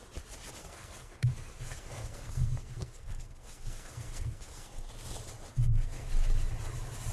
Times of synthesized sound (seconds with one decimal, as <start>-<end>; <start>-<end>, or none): 0.6-4.9; 5.5-6.1

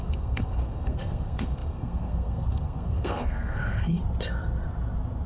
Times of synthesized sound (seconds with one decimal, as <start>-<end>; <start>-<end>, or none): 0.0-4.0